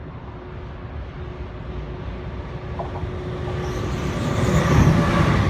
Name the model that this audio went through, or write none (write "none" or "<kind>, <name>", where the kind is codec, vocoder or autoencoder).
none